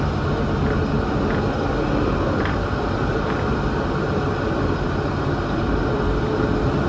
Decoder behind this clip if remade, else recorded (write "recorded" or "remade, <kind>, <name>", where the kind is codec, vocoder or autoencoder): recorded